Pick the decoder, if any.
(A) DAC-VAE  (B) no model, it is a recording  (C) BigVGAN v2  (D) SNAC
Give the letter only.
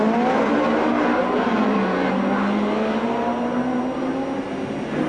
B